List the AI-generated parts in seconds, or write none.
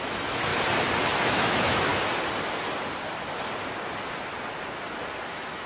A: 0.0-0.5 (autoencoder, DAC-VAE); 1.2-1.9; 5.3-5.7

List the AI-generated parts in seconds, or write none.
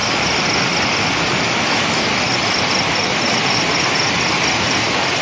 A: none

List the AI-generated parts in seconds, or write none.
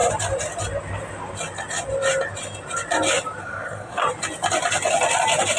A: 3.4-4.0 (codec, SNAC)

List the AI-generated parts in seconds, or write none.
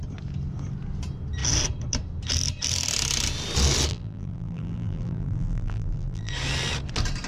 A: 3.9-6.3 (vocoder, BigVGAN v2)